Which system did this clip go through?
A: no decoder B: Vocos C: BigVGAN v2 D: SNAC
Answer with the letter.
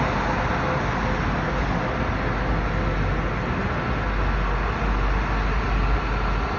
A